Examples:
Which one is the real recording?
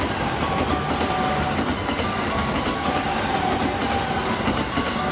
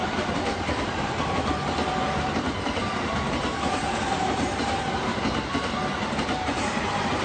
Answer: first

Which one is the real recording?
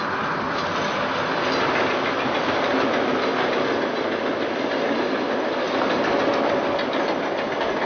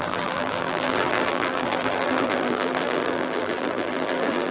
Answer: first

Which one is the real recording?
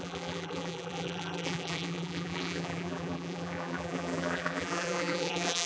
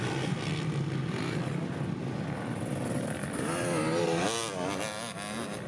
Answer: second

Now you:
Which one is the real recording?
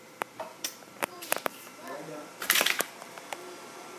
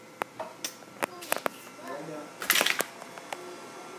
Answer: second